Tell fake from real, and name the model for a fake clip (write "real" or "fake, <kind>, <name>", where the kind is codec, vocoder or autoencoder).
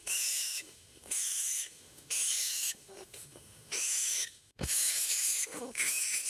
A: fake, autoencoder, DAC-VAE